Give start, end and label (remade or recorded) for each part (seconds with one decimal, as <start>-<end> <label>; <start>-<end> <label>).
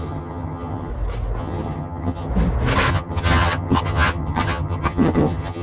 0.0-0.9 remade; 0.9-1.4 recorded; 1.4-2.3 remade; 2.3-2.9 recorded; 2.9-5.6 remade